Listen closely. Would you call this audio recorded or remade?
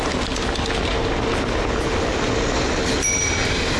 recorded